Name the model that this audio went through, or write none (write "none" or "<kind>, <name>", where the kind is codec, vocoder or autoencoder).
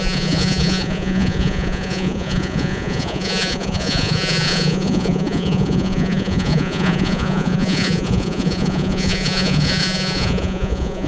vocoder, Vocos